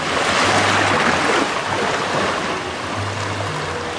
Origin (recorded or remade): recorded